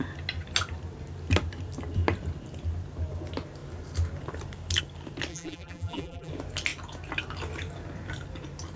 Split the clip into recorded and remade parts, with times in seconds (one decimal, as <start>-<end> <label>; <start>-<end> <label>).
0.0-5.3 recorded; 5.3-6.3 remade; 6.3-8.8 recorded